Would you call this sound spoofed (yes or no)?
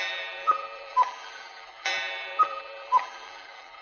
yes